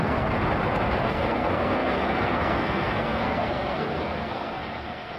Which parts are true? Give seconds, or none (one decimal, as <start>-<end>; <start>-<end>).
0.4-1.0